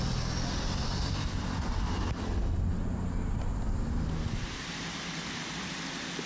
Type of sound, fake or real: real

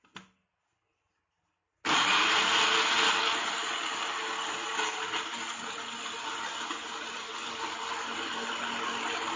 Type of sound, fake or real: real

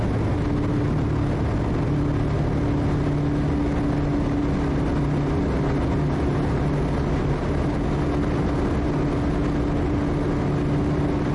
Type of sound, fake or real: real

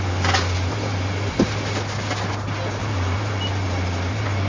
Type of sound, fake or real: real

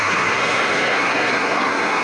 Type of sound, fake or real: fake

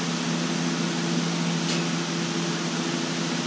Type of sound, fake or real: real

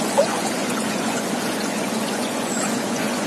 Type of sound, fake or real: fake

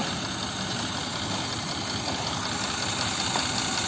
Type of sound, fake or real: real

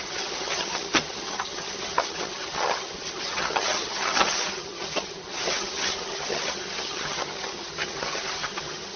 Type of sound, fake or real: fake